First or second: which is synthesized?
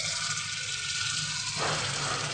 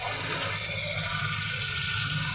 first